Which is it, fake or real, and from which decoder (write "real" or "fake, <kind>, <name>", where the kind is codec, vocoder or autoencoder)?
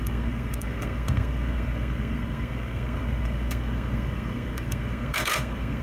fake, codec, SNAC